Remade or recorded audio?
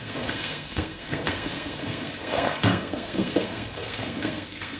remade